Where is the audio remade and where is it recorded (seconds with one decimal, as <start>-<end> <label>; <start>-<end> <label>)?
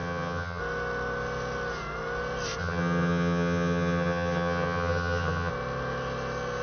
0.0-0.6 remade; 0.6-2.6 recorded; 2.6-5.5 remade; 5.5-6.6 recorded